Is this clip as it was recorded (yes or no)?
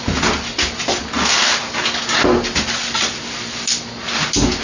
yes